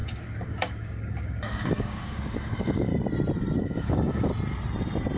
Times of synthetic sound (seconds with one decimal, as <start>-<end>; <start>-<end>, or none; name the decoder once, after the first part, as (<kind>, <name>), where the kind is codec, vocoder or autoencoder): 0.0-2.9 (codec, DAC); 3.6-4.3